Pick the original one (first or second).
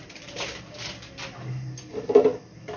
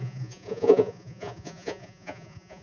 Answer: first